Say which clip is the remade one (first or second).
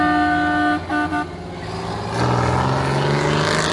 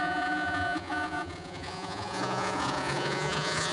second